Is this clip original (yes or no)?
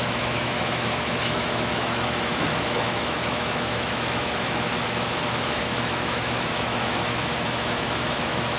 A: no